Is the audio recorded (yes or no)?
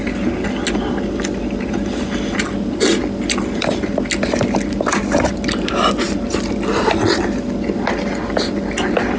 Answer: yes